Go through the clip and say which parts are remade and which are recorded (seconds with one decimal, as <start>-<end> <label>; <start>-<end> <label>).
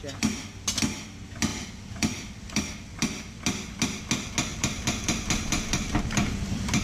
0.0-1.5 recorded; 1.5-2.7 remade; 2.7-4.5 recorded; 4.5-6.8 remade